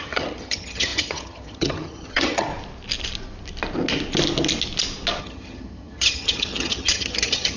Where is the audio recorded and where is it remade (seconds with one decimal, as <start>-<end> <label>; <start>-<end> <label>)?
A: 0.0-2.5 remade; 2.5-5.2 recorded; 5.2-7.6 remade